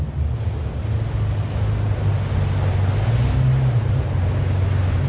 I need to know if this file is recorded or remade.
recorded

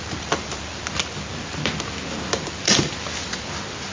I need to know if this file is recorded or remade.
recorded